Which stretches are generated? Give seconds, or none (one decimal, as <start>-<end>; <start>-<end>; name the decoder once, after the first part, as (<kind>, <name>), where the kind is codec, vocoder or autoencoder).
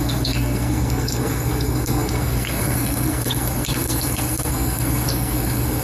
0.0-5.8 (codec, SNAC)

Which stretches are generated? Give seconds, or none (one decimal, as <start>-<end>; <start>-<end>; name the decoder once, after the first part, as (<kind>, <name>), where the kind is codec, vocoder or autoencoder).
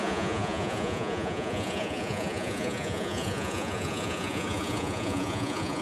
0.0-5.8 (vocoder, Vocos)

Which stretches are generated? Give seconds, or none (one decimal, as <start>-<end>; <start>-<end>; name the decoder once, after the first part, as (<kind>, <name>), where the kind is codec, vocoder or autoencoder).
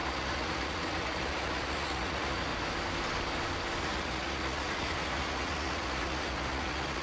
0.0-2.5 (vocoder, Vocos); 3.8-7.0